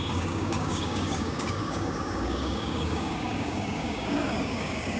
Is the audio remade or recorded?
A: remade